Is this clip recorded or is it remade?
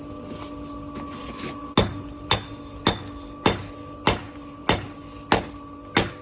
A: recorded